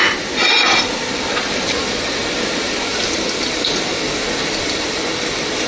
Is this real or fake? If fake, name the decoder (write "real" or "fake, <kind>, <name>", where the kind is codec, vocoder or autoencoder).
real